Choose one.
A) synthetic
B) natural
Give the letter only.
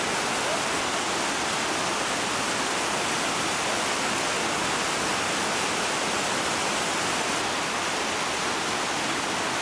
B